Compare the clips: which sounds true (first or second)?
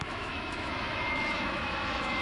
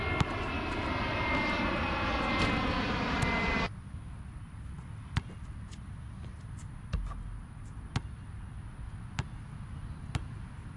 second